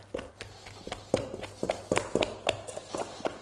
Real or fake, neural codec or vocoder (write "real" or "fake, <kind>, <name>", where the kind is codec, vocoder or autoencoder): real